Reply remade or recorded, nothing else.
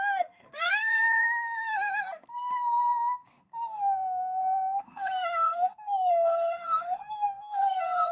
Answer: remade